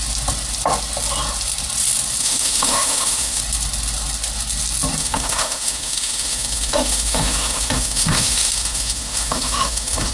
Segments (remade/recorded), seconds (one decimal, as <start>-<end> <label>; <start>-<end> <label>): 0.0-2.2 recorded; 2.2-3.4 remade; 3.4-5.0 recorded; 5.0-10.1 remade